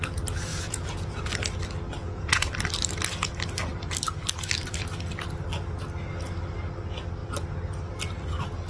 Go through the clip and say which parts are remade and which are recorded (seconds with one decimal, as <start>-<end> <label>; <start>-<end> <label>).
0.0-0.5 recorded; 0.5-1.3 remade; 1.3-2.0 recorded; 2.0-2.5 remade; 2.5-8.7 recorded